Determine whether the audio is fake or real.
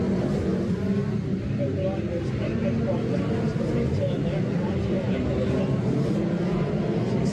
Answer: real